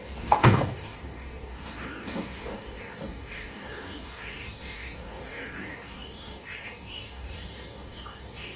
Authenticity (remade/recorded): remade